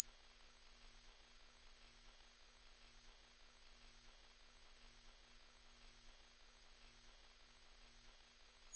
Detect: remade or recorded remade